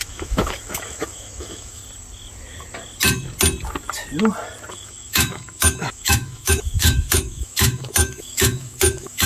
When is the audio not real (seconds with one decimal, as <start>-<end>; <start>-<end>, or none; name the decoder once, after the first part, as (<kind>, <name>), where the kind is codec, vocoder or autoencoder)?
0.0-1.8 (autoencoder, DAC-VAE); 4.7-9.3